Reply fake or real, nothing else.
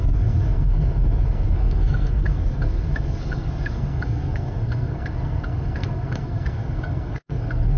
fake